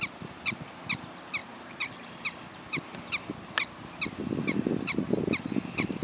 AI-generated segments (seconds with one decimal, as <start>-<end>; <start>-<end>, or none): none